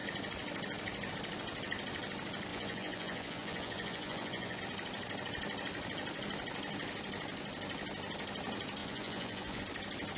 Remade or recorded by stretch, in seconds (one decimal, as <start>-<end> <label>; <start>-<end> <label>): 0.0-2.5 recorded; 2.5-4.6 remade; 4.6-8.8 recorded; 8.8-9.6 remade; 9.6-10.2 recorded